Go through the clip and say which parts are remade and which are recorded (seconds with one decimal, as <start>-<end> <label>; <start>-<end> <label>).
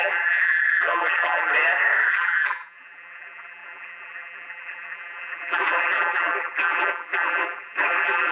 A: 0.0-1.5 remade; 1.5-2.1 recorded; 2.1-8.3 remade